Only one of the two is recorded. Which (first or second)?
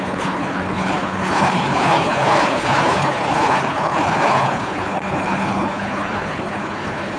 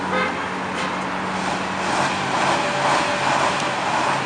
second